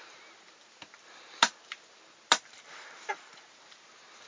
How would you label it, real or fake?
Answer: real